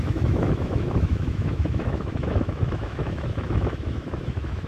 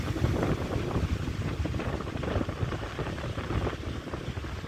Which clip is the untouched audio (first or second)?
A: second